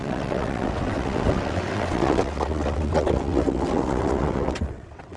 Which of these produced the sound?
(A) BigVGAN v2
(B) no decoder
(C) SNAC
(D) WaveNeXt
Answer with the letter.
D